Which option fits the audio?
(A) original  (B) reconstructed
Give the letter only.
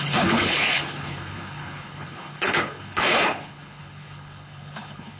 B